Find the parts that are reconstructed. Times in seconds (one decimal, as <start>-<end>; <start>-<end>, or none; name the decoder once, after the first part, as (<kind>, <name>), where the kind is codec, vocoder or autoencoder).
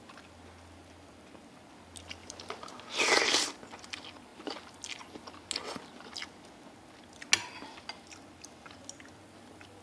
2.2-3.4 (vocoder, BigVGAN v2)